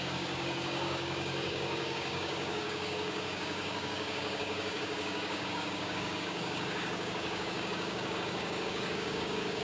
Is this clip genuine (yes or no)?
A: no